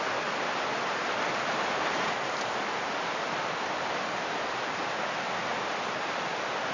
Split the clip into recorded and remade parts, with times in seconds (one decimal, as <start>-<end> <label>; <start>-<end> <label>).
0.0-5.5 recorded; 5.5-6.7 remade